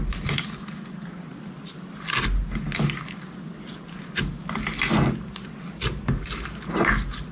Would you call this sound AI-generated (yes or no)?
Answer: no